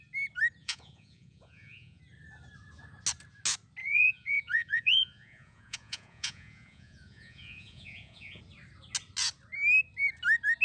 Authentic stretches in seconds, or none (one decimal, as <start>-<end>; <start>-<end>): 0.0-0.6; 2.0-3.8; 8.4-10.6